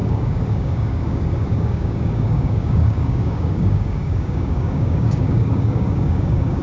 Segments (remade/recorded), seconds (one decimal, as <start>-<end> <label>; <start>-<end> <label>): 0.0-6.6 remade